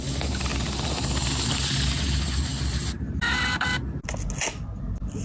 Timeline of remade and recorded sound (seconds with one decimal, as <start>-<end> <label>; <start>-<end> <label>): 0.0-5.2 recorded